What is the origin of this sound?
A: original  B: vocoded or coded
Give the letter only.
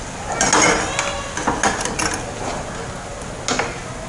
A